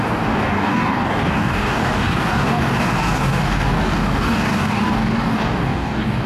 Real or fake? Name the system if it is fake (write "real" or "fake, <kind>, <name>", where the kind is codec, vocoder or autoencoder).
fake, codec, DAC